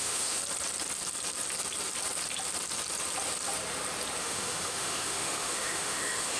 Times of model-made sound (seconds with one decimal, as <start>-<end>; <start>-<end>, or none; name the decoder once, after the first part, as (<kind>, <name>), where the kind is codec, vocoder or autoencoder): 0.0-0.4 (autoencoder, DAC-VAE); 4.2-6.4